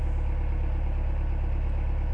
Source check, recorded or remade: recorded